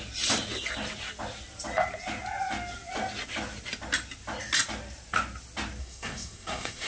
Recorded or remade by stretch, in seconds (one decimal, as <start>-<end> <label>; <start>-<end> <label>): 0.0-5.8 recorded; 5.8-6.9 remade

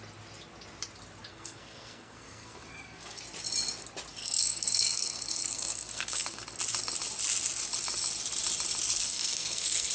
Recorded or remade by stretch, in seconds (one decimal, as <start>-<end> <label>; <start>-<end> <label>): 0.0-1.3 recorded; 1.3-3.2 remade; 3.2-4.2 recorded; 4.2-6.4 remade; 6.4-9.0 recorded; 9.0-9.9 remade

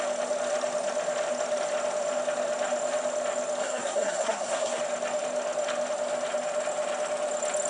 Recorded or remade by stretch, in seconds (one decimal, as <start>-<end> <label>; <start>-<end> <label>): 0.0-3.6 recorded; 3.6-4.8 remade; 4.8-7.7 recorded

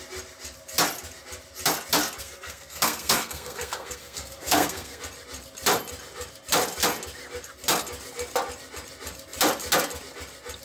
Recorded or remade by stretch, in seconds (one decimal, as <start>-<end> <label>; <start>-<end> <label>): 0.0-2.2 recorded; 2.2-5.0 remade; 5.0-10.6 recorded

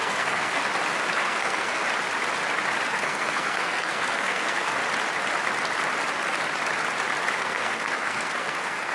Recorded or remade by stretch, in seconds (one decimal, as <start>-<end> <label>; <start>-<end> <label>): 0.0-0.6 remade; 0.6-1.2 recorded; 1.2-1.8 remade; 1.8-2.9 recorded; 2.9-4.8 remade; 4.8-7.4 recorded; 7.4-8.9 remade

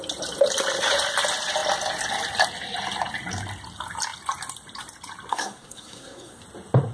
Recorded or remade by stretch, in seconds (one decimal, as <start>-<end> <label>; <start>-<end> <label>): 0.0-5.3 recorded; 5.3-6.4 remade; 6.4-6.9 recorded

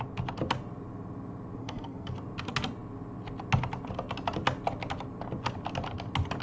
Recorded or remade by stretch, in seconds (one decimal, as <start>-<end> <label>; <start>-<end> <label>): 0.0-1.6 recorded; 1.6-2.1 remade; 2.1-6.4 recorded

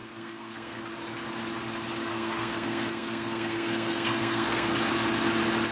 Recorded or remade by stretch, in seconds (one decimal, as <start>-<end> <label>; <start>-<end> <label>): 0.0-0.8 remade; 0.8-2.1 recorded; 2.1-4.7 remade; 4.7-5.7 recorded